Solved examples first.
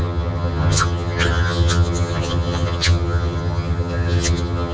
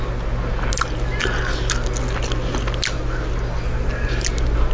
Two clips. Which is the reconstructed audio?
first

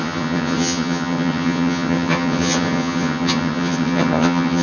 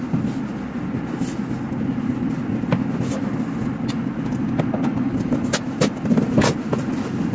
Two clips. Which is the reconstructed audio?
first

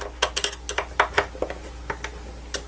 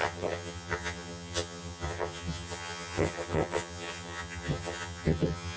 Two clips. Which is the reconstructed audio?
second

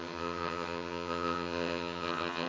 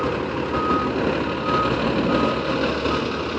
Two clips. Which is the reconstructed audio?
first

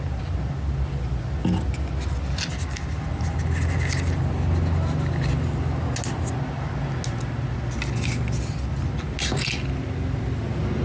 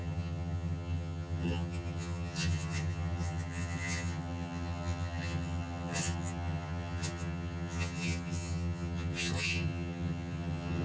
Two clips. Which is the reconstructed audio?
second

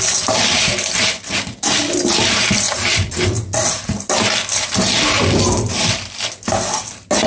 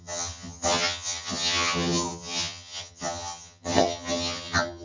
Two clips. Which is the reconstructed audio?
second